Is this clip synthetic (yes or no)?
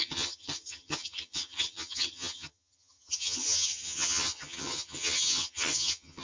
yes